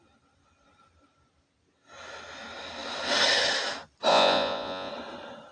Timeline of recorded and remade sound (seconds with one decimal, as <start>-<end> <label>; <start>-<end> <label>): 0.0-4.1 recorded; 4.1-4.9 remade; 4.9-5.5 recorded